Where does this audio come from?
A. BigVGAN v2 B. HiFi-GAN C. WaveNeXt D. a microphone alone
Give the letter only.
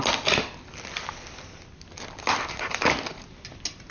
D